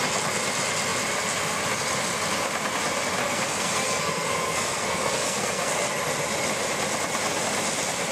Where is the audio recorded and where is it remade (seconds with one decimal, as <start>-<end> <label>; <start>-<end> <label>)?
0.0-3.2 recorded; 3.2-5.7 remade; 5.7-8.1 recorded